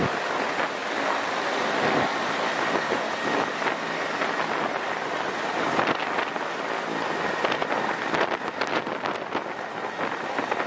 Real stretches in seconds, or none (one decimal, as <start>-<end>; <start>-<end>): 0.0-10.7